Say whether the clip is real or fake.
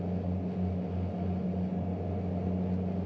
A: real